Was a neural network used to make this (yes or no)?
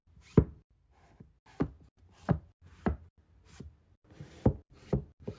no